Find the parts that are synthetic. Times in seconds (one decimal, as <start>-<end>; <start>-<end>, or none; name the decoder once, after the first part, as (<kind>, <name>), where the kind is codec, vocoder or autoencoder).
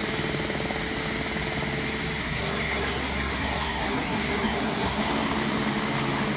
2.2-5.0 (codec, SNAC)